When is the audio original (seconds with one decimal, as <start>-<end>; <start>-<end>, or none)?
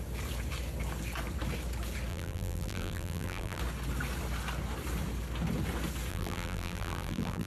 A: 0.0-2.1; 3.6-6.1